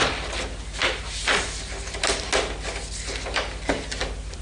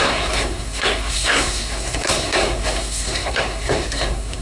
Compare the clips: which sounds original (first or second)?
first